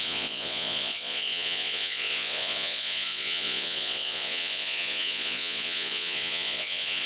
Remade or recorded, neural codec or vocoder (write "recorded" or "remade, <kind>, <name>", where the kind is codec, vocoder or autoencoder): remade, vocoder, Vocos